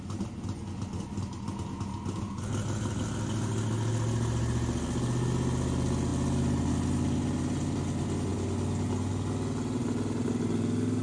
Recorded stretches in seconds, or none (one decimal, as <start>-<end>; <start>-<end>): 0.0-11.0